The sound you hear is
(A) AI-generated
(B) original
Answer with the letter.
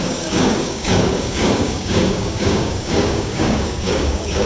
A